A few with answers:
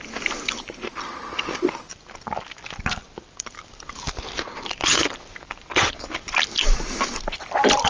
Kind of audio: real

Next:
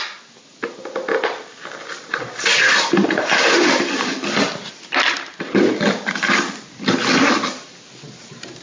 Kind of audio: real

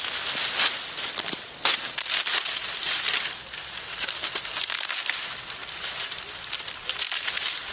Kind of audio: real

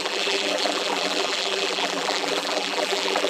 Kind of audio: fake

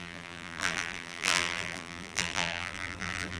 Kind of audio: fake